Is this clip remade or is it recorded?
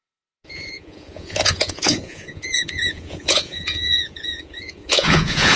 remade